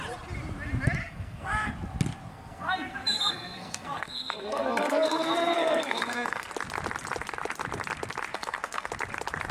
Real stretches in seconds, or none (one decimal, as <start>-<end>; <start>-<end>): 0.0-1.0; 1.7-2.3; 6.5-8.3; 8.9-9.5